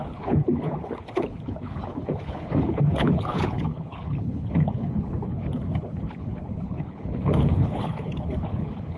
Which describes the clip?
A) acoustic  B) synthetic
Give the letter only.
B